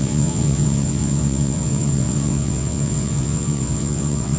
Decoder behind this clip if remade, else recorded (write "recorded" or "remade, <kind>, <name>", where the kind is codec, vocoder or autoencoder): remade, vocoder, WaveNeXt